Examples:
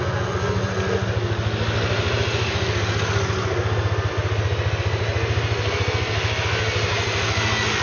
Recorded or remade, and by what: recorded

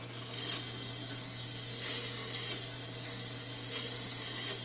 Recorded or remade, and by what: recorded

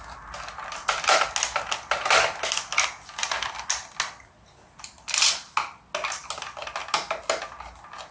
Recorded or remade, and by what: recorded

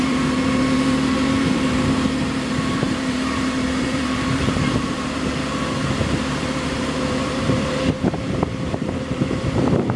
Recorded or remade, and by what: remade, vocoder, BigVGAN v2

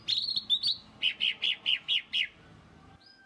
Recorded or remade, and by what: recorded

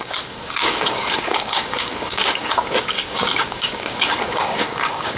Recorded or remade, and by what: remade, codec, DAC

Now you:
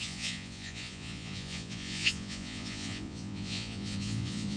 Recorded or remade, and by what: remade, vocoder, Vocos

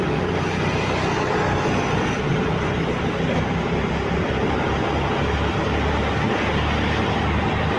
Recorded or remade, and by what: recorded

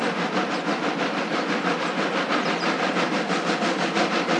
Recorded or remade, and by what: recorded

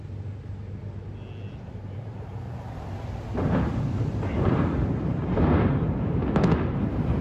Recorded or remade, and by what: recorded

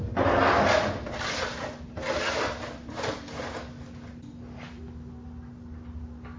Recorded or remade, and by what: recorded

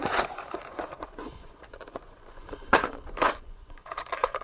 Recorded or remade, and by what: remade, vocoder, Vocos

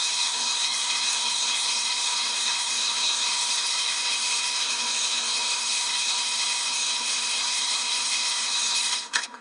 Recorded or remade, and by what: remade, codec, SNAC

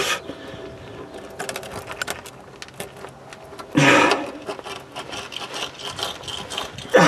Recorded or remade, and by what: recorded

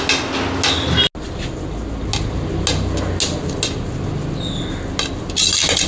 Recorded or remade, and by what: recorded